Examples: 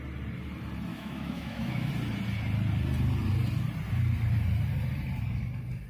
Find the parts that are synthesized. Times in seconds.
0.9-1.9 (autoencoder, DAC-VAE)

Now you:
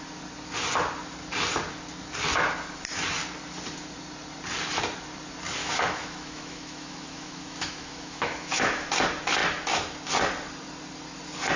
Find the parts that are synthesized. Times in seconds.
5.6-8.9 (autoencoder, DAC-VAE)

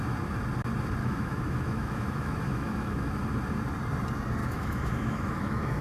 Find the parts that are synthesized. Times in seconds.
1.0-3.2 (autoencoder, DAC-VAE); 4.4-5.8

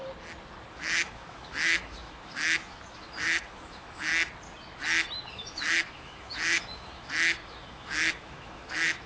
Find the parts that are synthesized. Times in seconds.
0.7-4.1 (autoencoder, DAC-VAE); 5.3-9.1

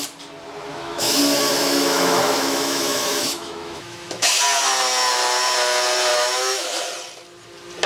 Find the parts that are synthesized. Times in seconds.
0.7-1.2 (autoencoder, DAC-VAE); 1.6-4.4; 6.1-6.8

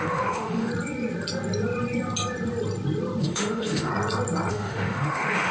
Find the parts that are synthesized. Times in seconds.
0.0-0.7 (autoencoder, DAC-VAE); 3.2-3.9; 4.5-5.5